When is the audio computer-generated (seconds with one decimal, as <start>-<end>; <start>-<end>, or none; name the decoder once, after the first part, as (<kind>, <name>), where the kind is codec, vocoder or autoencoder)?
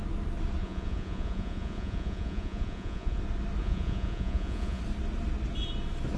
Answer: 0.6-3.2 (vocoder, Vocos); 3.6-4.8